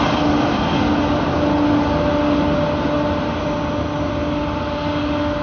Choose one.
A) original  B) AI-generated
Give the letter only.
A